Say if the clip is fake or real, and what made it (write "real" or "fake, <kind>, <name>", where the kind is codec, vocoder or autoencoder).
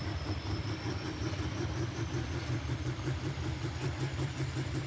fake, vocoder, BigVGAN v2